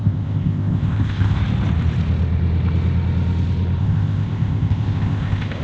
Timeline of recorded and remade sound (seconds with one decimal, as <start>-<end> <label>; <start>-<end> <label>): 0.0-1.4 remade; 1.4-3.8 recorded; 3.8-5.6 remade